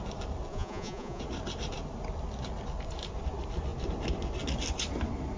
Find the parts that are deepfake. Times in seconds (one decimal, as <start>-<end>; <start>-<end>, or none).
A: 0.5-1.2